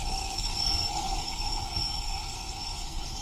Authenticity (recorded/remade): remade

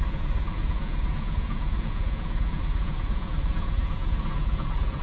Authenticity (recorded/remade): remade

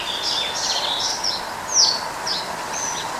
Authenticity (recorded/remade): recorded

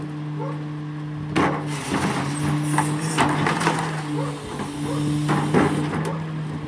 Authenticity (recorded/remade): recorded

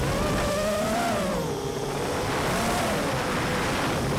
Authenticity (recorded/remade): remade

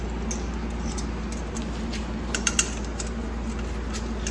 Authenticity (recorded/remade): recorded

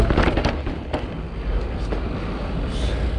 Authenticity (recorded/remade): recorded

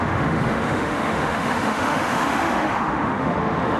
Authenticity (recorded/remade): remade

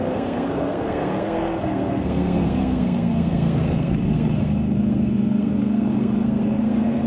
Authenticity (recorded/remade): remade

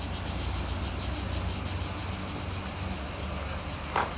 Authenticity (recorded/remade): recorded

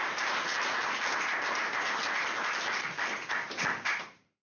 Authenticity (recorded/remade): recorded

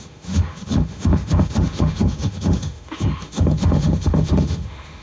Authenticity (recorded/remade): remade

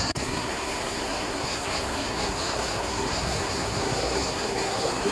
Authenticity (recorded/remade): remade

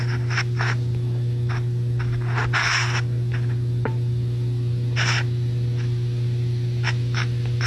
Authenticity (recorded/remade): recorded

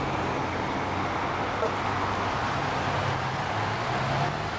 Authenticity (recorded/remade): recorded